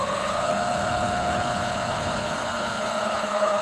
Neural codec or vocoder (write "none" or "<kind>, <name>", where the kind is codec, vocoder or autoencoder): codec, HILCodec